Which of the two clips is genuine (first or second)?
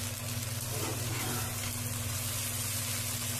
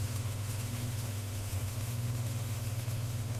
first